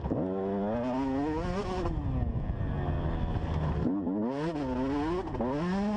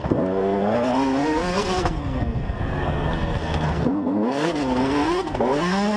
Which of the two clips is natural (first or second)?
first